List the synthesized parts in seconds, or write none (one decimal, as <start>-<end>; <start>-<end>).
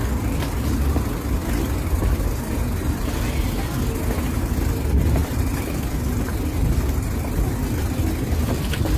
none